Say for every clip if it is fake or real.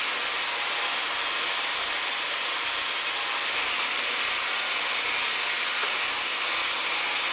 real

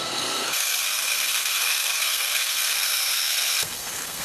fake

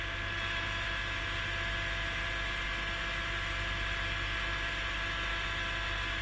real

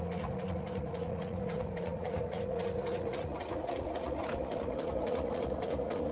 fake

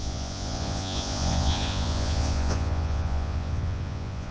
fake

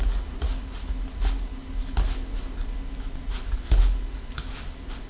real